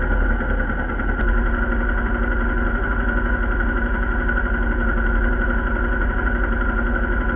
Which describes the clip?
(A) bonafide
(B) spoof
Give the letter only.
A